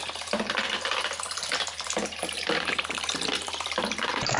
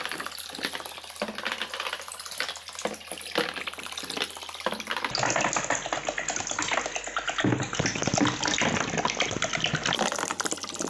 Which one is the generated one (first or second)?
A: first